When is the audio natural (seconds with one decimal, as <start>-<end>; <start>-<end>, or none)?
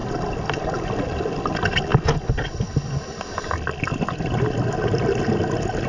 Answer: 0.0-5.9